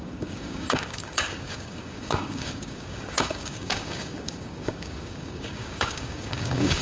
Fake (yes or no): yes